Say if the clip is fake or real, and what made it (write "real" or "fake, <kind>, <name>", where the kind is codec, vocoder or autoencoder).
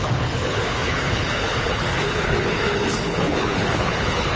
fake, codec, HILCodec